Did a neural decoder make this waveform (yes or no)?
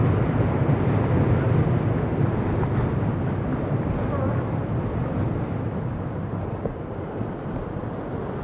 no